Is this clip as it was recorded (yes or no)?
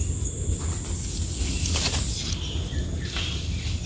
yes